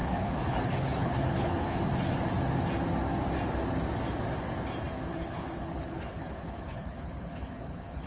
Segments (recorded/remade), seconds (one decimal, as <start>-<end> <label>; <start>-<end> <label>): 0.0-1.8 remade; 1.8-5.1 recorded; 5.1-8.1 remade